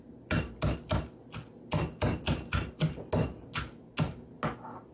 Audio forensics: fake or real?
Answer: real